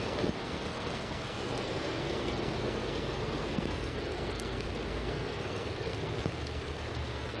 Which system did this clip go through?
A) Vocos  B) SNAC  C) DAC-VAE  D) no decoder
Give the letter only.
B